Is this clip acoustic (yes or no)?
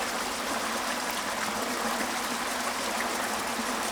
yes